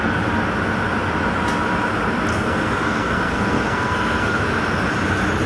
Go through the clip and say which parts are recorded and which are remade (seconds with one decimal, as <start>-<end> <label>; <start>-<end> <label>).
0.0-2.3 recorded; 2.3-4.4 remade; 4.4-5.5 recorded